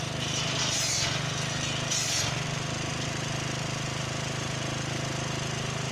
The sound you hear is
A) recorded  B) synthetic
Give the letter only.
A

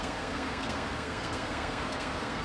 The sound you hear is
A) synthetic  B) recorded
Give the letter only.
A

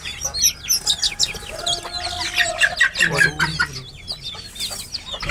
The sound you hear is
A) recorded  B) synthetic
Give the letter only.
A